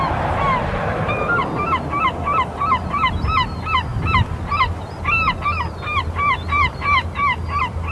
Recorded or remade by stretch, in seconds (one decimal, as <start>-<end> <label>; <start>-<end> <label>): 0.0-1.4 remade; 1.4-2.8 recorded; 2.8-3.9 remade; 3.9-6.0 recorded; 6.0-7.9 remade